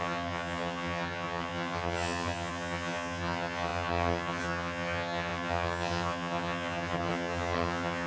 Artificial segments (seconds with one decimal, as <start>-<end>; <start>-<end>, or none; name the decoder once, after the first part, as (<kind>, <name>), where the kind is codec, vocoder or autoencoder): 0.0-8.1 (vocoder, HiFi-GAN)